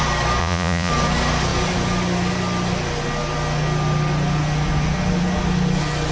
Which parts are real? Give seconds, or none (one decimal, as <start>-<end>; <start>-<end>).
0.0-0.4; 0.9-6.1